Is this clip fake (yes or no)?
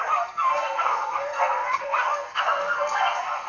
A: yes